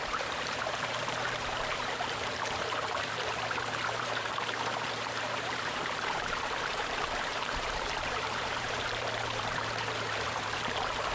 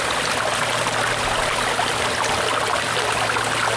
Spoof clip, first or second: first